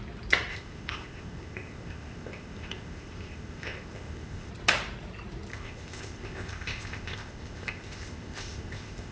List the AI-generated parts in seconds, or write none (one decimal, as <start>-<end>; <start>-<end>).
0.5-4.5; 5.5-9.1